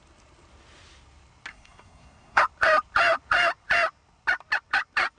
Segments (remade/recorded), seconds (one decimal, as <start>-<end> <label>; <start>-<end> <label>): 0.0-1.5 recorded; 1.5-2.4 remade; 2.4-5.2 recorded